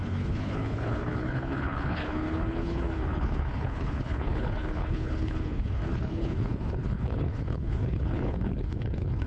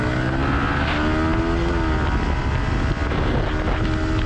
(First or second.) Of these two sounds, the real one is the second